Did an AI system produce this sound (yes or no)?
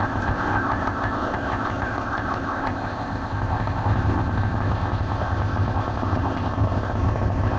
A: yes